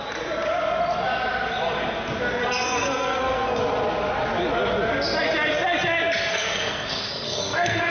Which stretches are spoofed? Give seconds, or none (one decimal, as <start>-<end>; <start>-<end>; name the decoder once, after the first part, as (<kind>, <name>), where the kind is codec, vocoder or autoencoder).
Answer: 2.4-3.6 (codec, SNAC); 6.3-7.9